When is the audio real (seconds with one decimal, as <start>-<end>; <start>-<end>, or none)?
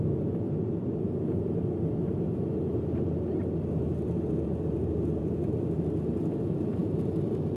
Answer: 6.8-7.6